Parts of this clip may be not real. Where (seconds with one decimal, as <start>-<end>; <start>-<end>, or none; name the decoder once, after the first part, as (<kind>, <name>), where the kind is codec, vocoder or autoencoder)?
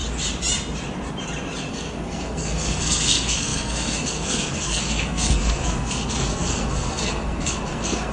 1.7-8.1 (codec, SNAC)